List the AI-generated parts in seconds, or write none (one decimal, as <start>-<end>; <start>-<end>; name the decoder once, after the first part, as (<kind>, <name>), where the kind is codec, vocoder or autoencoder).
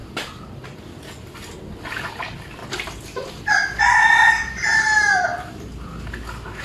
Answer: 2.1-2.6 (vocoder, BigVGAN v2); 4.3-5.3